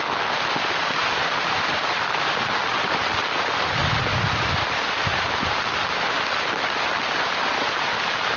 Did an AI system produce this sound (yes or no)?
yes